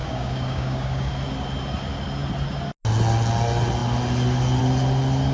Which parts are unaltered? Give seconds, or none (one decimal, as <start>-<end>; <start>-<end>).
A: 1.1-5.3